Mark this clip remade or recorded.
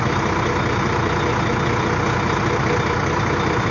recorded